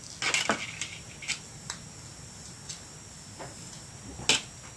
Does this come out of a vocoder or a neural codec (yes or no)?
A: no